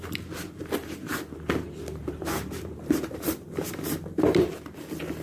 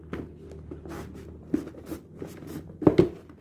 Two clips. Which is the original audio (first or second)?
second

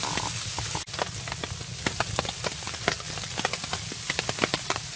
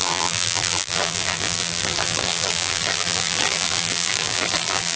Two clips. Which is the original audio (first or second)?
first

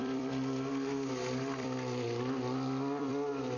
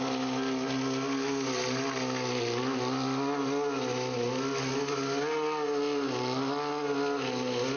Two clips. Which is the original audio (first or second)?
second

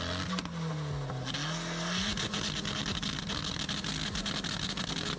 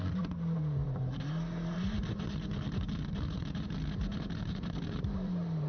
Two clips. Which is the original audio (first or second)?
first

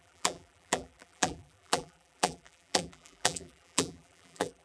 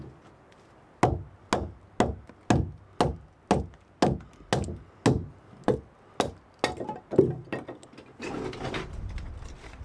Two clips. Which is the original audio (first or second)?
second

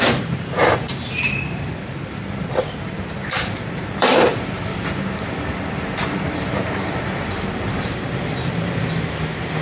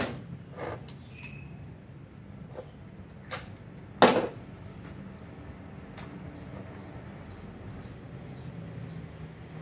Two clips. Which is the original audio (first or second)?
second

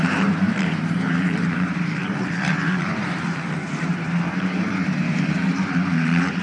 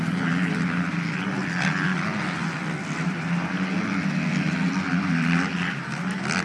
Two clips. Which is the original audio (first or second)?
second